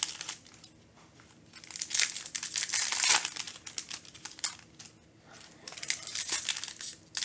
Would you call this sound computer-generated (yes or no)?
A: no